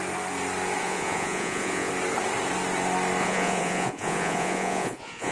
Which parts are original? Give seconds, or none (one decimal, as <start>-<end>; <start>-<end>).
0.0-0.8; 1.9-3.2